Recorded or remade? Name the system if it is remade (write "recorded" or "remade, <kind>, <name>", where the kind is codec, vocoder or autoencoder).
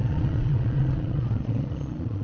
remade, vocoder, Vocos